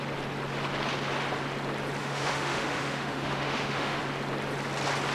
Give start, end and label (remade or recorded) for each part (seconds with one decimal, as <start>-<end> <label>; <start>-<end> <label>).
0.0-2.0 recorded; 2.0-4.0 remade; 4.0-5.1 recorded